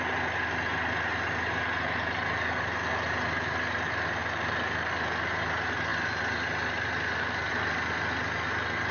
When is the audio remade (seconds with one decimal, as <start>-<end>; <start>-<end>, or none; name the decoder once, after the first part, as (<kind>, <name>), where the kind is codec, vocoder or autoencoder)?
none

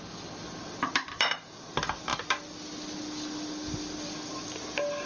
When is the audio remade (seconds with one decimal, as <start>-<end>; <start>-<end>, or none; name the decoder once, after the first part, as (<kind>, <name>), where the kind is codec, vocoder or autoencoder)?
none